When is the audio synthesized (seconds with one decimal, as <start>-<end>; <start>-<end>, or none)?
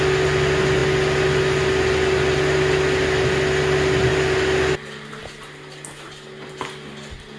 none